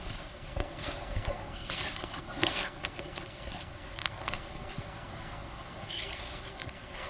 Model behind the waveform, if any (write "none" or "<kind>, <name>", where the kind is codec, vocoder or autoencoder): codec, SNAC